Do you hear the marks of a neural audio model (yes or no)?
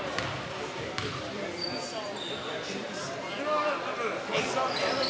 no